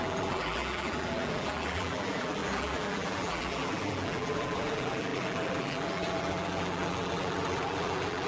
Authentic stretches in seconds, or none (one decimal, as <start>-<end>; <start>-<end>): none